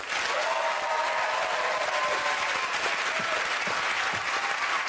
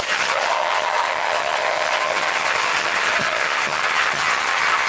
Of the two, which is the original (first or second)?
first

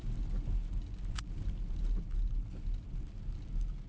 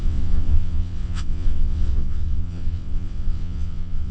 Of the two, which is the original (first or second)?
first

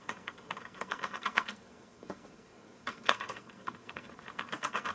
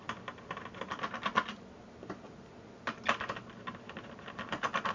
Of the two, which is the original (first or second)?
second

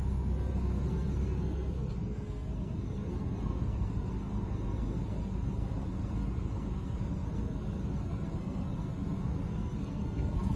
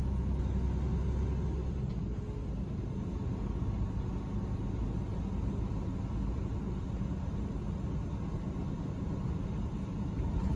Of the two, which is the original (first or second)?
second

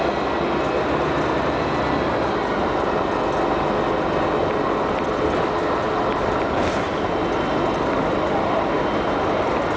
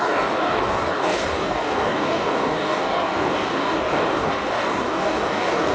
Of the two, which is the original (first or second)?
first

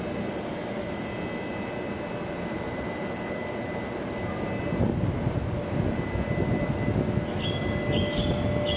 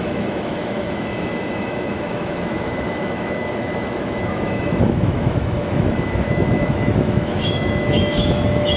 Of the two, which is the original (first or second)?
first